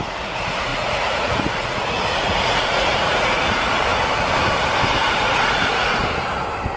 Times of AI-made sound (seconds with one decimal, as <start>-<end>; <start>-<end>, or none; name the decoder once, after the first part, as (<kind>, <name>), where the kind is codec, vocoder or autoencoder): 0.0-3.9 (vocoder, Vocos); 5.0-6.0